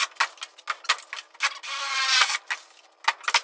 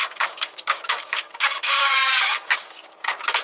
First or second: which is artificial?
second